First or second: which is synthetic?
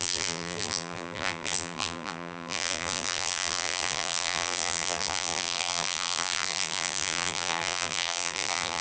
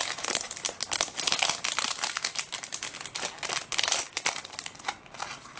first